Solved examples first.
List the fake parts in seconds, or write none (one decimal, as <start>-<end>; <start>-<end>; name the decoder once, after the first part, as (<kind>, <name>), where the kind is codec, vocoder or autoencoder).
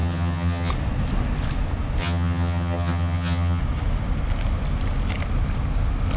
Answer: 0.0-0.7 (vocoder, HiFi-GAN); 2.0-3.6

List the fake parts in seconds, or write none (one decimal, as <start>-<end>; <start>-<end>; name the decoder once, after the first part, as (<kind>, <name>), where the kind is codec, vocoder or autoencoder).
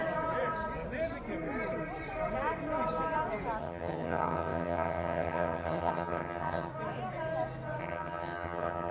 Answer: 3.6-6.7 (vocoder, HiFi-GAN); 7.8-8.9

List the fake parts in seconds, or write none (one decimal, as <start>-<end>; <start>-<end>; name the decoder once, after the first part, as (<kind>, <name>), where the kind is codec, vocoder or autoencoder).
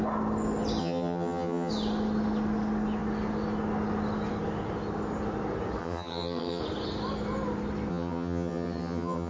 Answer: 0.8-1.7 (vocoder, HiFi-GAN); 5.8-6.6; 7.9-9.3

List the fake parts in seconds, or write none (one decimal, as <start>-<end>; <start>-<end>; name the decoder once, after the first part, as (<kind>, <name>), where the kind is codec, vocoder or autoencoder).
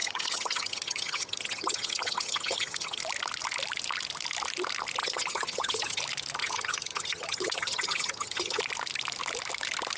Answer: 0.0-3.0 (vocoder, HiFi-GAN); 5.0-6.0; 6.4-8.6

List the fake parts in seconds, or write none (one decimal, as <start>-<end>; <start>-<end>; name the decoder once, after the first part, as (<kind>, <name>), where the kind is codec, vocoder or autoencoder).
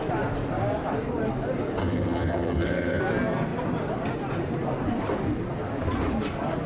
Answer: 1.8-3.0 (vocoder, HiFi-GAN)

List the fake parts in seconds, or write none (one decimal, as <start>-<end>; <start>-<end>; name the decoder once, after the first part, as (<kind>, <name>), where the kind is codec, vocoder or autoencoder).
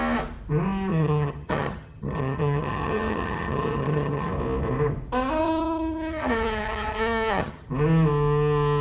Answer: 0.9-4.3 (vocoder, HiFi-GAN); 5.4-7.7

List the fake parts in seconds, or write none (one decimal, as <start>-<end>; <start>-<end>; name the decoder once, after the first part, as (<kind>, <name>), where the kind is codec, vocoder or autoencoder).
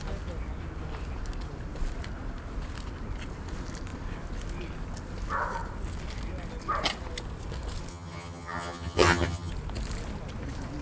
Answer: 7.9-9.5 (vocoder, HiFi-GAN)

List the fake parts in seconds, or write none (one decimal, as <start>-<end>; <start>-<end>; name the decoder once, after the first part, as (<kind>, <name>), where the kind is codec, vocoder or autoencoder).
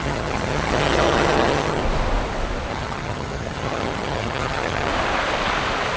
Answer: 0.0-1.8 (vocoder, HiFi-GAN); 2.7-4.9